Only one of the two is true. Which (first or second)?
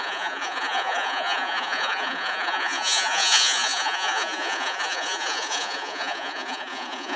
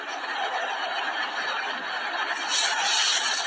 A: second